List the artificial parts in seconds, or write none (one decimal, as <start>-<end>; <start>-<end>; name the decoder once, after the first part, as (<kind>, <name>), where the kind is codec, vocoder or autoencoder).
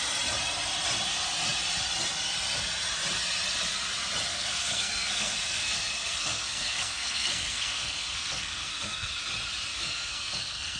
4.3-9.1 (codec, SNAC); 9.7-10.8